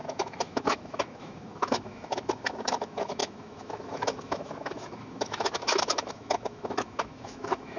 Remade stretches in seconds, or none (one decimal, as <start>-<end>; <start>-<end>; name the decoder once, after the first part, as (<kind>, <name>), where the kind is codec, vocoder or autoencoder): 0.0-7.8 (autoencoder, DAC-VAE)